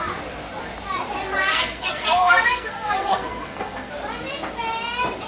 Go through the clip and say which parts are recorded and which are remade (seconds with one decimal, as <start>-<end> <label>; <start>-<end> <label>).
0.0-1.4 recorded; 1.4-3.9 remade; 3.9-5.3 recorded